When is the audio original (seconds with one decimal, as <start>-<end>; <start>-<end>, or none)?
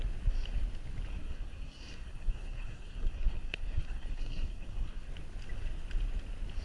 0.0-1.1; 5.1-6.6